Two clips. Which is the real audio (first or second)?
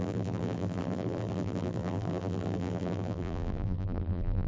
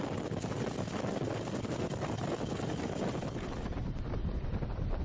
second